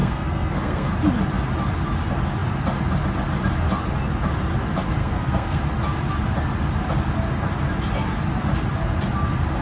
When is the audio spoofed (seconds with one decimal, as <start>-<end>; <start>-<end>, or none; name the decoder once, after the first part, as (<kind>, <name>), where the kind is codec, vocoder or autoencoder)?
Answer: 0.0-0.9 (codec, SNAC); 5.0-5.6